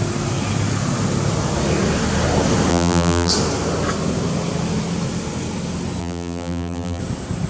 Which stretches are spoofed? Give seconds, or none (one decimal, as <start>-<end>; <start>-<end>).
2.7-3.3; 6.0-7.0